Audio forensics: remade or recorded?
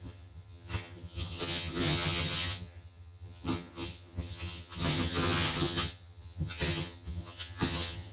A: remade